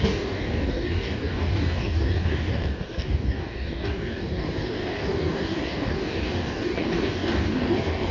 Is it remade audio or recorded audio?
remade